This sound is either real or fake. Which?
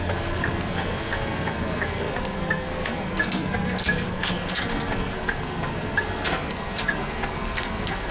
fake